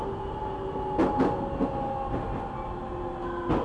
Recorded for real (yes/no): yes